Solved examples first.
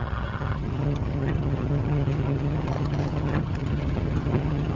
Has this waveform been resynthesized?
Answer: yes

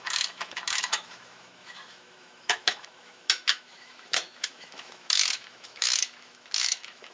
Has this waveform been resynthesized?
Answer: yes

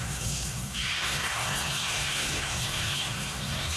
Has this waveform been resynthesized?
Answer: yes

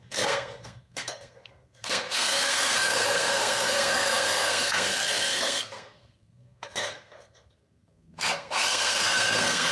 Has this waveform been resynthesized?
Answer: yes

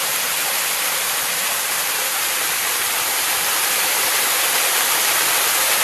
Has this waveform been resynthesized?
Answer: yes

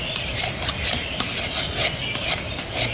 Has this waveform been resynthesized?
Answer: no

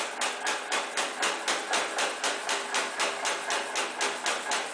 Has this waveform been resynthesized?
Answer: no